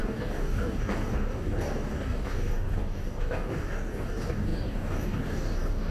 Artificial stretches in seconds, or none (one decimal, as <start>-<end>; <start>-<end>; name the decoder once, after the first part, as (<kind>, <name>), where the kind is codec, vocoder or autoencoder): 0.0-5.9 (codec, DAC)